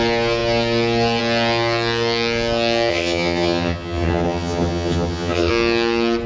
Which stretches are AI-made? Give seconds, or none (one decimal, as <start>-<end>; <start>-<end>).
2.9-5.5